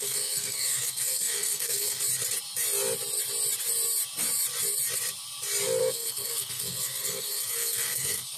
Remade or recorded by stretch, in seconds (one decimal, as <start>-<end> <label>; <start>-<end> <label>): 0.0-2.0 remade; 2.0-5.8 recorded; 5.8-8.4 remade